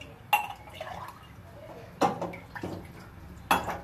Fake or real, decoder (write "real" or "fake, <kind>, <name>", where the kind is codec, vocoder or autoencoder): real